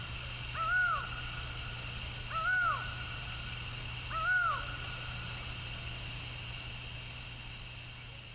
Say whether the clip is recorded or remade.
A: recorded